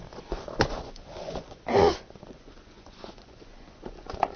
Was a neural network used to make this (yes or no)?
yes